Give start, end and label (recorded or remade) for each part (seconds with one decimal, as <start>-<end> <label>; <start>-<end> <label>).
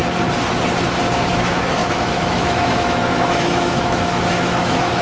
0.0-1.3 recorded; 1.3-5.0 remade